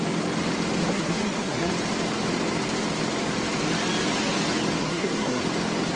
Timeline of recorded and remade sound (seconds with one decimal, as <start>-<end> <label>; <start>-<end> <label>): 0.0-0.8 recorded; 0.8-1.7 remade; 1.7-4.8 recorded; 4.8-5.4 remade; 5.4-6.0 recorded